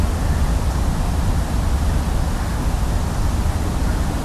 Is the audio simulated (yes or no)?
no